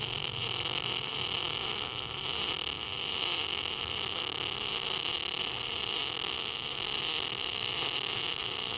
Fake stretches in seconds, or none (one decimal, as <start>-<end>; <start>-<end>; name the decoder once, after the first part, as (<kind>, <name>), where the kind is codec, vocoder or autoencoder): none